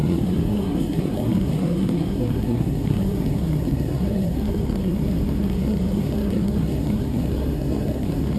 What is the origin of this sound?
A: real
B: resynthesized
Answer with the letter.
B